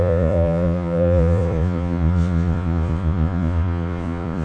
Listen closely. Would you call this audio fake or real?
fake